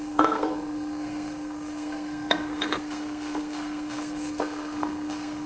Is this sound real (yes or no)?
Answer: no